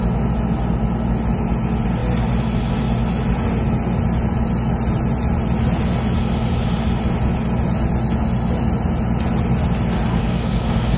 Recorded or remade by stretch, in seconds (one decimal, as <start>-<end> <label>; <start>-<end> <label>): 0.0-10.1 recorded; 10.1-11.0 remade